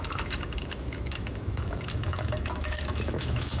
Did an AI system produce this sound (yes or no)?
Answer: yes